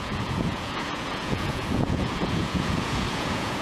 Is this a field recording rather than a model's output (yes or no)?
no